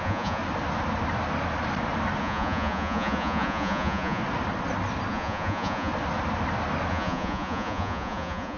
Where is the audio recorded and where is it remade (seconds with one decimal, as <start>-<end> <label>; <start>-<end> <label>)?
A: 0.0-0.4 remade; 0.4-2.2 recorded; 2.2-4.2 remade; 4.2-5.1 recorded; 5.1-5.9 remade; 5.9-6.9 recorded; 6.9-8.6 remade